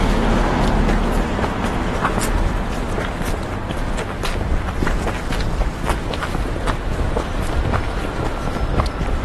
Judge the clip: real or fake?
real